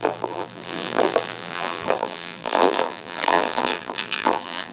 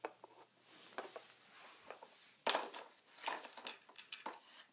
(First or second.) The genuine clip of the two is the second